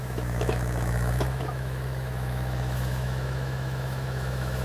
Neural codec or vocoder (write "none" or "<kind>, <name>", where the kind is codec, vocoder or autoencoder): autoencoder, DAC-VAE